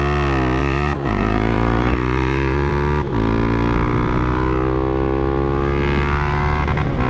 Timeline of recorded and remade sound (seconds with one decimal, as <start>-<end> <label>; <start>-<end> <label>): 0.0-0.6 recorded; 0.6-2.7 remade; 2.7-7.1 recorded